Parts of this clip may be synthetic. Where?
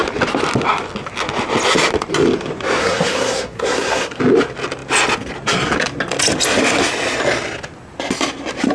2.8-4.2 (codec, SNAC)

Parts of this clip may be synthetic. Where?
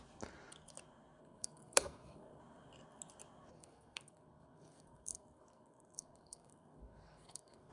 1.2-2.4 (codec, SNAC); 3.5-7.7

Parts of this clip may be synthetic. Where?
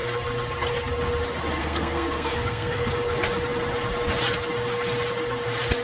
1.6-2.9 (codec, SNAC)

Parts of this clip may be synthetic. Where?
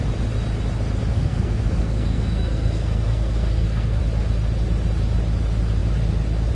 1.1-4.0 (codec, SNAC)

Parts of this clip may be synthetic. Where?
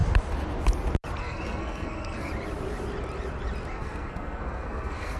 1.2-2.3 (codec, SNAC); 3.7-5.2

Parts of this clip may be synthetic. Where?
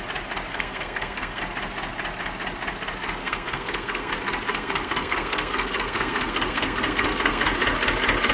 0.5-1.4 (codec, SNAC); 3.2-4.1; 4.5-7.5